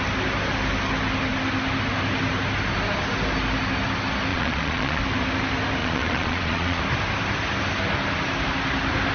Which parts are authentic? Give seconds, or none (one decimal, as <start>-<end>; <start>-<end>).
0.0-4.3; 5.0-5.8; 6.8-9.1